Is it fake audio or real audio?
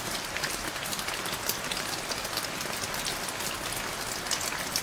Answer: real